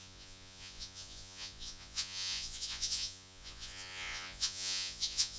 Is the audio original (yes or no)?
no